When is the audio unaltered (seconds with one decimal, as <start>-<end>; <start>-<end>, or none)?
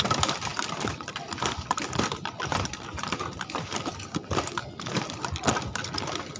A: 3.9-4.9